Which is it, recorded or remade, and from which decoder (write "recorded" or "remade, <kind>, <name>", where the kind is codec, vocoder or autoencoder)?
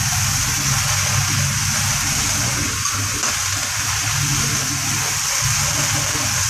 recorded